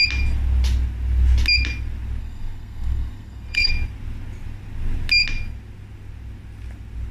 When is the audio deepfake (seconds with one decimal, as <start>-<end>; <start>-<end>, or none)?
2.2-3.7